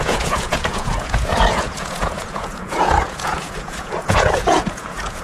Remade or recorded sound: remade